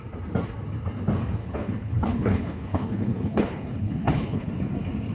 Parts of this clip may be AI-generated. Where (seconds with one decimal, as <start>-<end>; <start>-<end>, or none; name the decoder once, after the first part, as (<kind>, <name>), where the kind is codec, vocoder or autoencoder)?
1.4-4.5 (codec, HILCodec)